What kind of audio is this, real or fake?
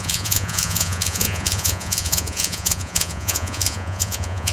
fake